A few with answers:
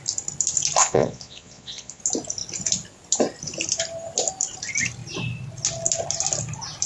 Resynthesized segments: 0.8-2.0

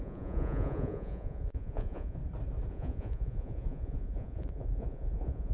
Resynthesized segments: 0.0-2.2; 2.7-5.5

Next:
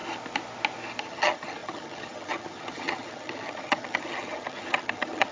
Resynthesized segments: 1.0-5.3

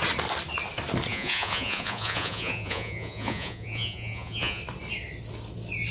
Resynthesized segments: 1.1-4.6

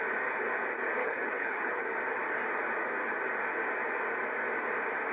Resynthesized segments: 1.0-1.8